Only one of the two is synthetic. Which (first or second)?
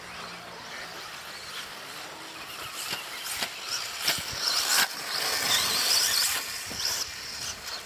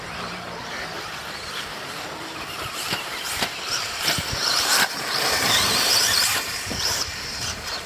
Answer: second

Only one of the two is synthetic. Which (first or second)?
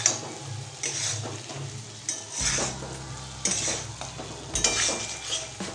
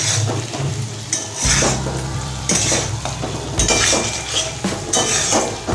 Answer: second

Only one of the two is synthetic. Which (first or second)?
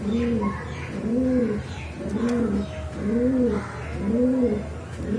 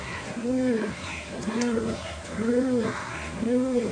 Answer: second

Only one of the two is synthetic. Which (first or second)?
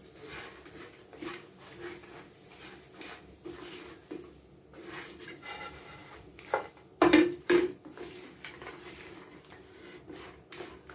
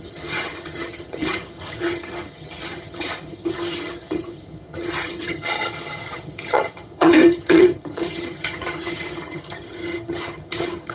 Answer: second